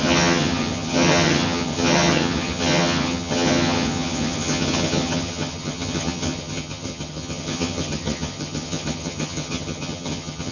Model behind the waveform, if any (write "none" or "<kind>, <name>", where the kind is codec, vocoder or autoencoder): vocoder, HiFi-GAN